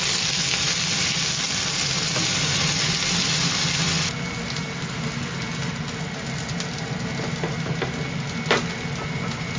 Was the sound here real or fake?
real